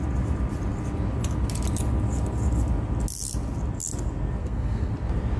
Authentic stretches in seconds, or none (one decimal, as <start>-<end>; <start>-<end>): 0.0-4.4; 4.9-5.4